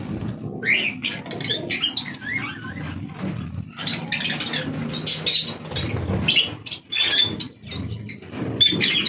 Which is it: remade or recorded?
recorded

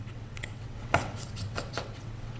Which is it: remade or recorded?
remade